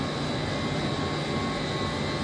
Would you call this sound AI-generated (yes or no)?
no